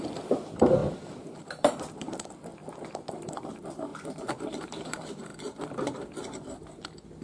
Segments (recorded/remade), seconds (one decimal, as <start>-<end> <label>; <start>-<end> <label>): 0.0-2.5 remade; 2.5-3.1 recorded; 3.1-3.9 remade; 3.9-4.5 recorded; 4.5-5.3 remade; 5.3-6.4 recorded; 6.4-7.2 remade